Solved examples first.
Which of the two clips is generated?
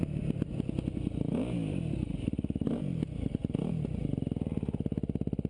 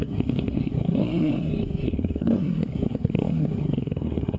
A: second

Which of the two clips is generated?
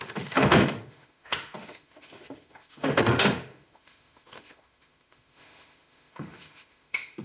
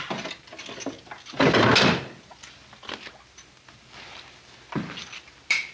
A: first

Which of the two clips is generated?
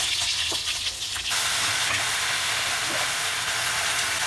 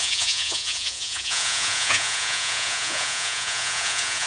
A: second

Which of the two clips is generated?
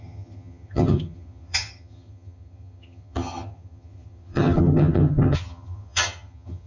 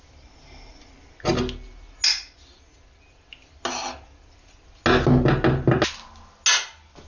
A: first